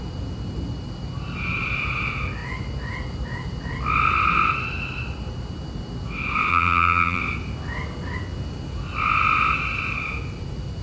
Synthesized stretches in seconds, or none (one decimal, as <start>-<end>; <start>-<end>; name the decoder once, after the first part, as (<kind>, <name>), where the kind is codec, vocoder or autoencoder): 6.5-7.2 (vocoder, BigVGAN v2)